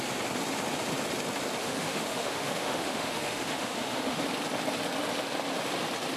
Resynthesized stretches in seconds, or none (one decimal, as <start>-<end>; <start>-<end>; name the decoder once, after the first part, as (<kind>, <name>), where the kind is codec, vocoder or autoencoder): 1.6-4.2 (autoencoder, DAC-VAE)